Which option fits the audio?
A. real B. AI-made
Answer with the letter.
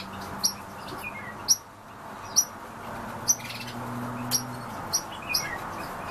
A